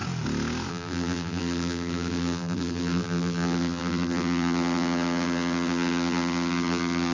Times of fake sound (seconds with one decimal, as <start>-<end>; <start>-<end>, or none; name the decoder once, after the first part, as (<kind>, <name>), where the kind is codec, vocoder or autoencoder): 0.7-7.1 (vocoder, BigVGAN v2)